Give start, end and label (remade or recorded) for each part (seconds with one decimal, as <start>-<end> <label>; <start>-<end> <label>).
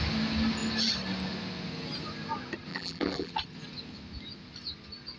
0.0-2.7 recorded; 2.7-3.3 remade; 3.3-5.2 recorded